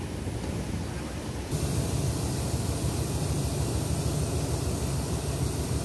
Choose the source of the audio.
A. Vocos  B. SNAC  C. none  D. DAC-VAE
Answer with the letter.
C